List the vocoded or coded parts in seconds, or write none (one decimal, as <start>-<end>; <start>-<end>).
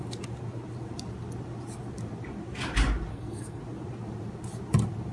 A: 3.1-3.6